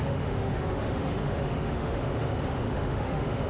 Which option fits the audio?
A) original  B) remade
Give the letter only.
B